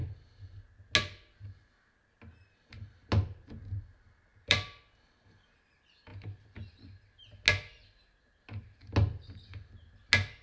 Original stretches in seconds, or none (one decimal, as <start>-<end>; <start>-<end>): 0.0-4.3; 4.8-10.4